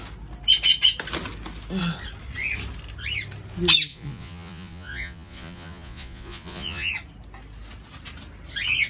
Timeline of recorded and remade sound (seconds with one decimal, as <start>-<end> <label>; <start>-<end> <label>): 0.0-3.9 recorded; 3.9-6.9 remade; 6.9-8.9 recorded